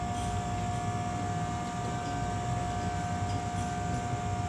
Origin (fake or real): real